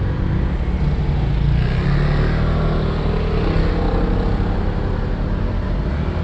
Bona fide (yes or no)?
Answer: yes